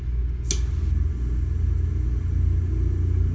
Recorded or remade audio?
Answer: recorded